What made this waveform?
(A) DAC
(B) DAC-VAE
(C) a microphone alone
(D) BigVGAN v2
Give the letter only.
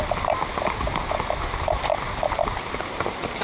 C